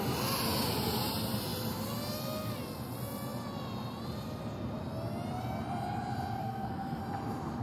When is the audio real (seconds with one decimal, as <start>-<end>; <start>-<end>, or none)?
0.0-6.4; 7.0-7.6